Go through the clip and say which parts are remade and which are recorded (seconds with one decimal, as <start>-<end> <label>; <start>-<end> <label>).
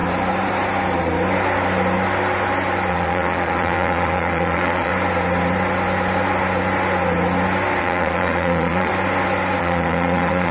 0.0-2.9 recorded; 2.9-4.9 remade; 4.9-7.8 recorded; 7.8-8.9 remade; 8.9-9.6 recorded; 9.6-10.5 remade